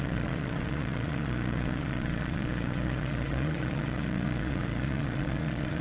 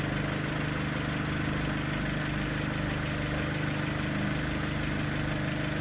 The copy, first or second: first